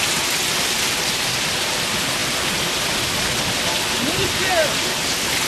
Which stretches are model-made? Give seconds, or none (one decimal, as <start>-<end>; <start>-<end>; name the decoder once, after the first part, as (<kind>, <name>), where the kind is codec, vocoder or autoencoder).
none